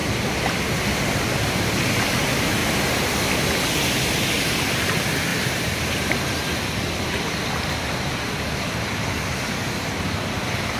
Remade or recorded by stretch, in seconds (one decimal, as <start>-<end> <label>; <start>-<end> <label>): 0.0-2.6 recorded; 2.6-3.2 remade; 3.2-5.3 recorded; 5.3-6.1 remade; 6.1-10.8 recorded